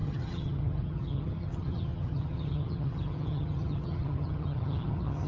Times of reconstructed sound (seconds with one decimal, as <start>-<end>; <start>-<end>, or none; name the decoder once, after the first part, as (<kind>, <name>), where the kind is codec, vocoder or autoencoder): 0.0-5.3 (vocoder, HiFi-GAN)